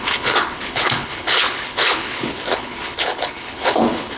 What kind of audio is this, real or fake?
fake